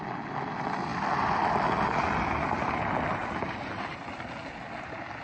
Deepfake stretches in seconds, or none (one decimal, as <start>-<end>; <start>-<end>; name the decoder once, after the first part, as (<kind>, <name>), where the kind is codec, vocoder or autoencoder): none